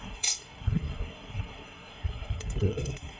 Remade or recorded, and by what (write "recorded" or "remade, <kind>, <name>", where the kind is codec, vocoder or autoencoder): remade, codec, SNAC